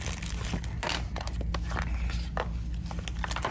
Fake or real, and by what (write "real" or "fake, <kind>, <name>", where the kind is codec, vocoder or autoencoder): real